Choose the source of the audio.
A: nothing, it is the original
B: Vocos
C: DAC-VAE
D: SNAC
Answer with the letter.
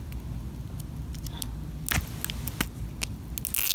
A